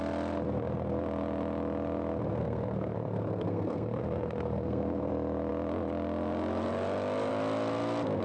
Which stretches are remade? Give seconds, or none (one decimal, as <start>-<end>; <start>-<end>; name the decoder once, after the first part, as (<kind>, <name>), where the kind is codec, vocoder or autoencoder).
2.3-5.1 (codec, SNAC)